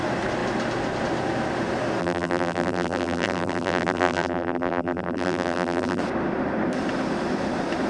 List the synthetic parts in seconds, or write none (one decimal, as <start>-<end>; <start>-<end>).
2.0-6.0